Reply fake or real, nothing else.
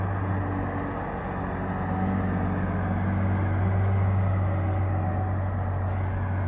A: real